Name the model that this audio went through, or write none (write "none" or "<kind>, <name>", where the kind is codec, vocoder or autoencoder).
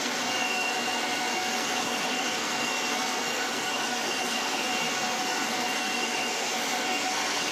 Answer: codec, SNAC